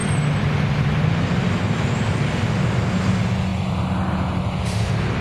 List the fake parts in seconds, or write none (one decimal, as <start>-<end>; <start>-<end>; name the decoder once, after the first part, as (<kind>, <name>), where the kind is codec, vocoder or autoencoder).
none